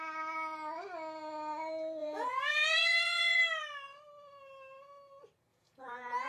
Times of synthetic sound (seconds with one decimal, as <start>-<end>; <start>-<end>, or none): 2.0-3.4; 5.5-6.3